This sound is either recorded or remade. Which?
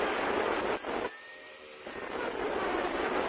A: recorded